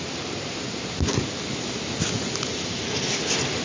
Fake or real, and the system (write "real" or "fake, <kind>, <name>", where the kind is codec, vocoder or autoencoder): real